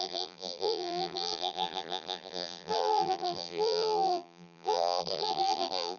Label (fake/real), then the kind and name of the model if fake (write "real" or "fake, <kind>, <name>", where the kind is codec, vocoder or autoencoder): fake, vocoder, BigVGAN v2